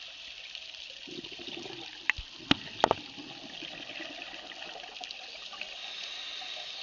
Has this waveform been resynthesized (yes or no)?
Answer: no